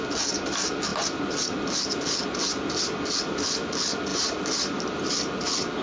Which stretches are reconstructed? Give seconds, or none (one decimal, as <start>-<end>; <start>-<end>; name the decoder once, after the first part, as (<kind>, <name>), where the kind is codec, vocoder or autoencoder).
4.1-5.1 (vocoder, BigVGAN v2)